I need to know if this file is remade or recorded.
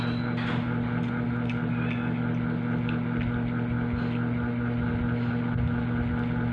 recorded